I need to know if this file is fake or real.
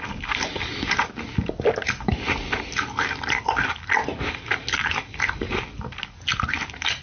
real